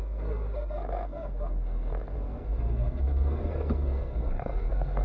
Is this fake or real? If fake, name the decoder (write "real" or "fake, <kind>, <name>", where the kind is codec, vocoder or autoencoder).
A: fake, codec, SNAC